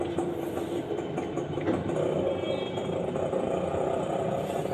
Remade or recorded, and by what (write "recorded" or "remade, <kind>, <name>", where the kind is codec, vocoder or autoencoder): recorded